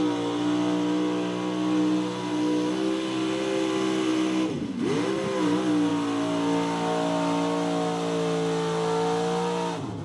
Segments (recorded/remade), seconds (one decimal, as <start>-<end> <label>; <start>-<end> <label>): 0.0-10.0 recorded